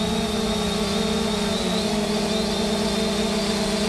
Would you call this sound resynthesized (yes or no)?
no